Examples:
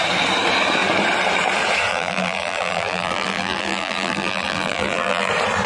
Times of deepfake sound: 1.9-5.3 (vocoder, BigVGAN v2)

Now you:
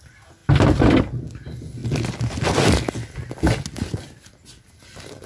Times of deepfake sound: none

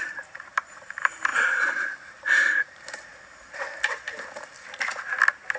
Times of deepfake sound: 0.0-3.1 (vocoder, BigVGAN v2)

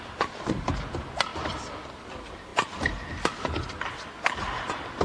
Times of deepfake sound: none

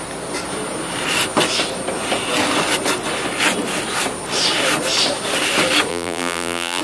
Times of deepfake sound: 5.9-6.8 (vocoder, BigVGAN v2)

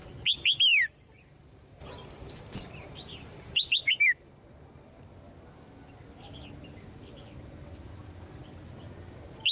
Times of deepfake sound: 0.7-4.3 (vocoder, BigVGAN v2)

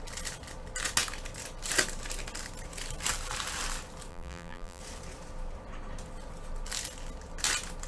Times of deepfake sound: 4.1-4.8 (vocoder, BigVGAN v2)

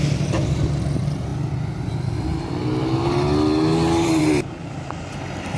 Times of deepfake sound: none